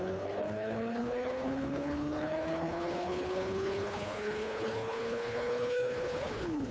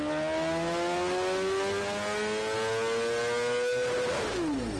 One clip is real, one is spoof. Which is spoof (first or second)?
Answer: first